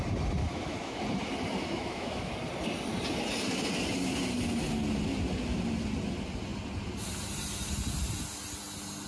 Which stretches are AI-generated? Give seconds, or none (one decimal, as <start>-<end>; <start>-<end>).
0.4-1.0; 1.6-2.3